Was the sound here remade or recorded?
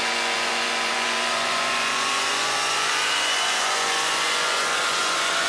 remade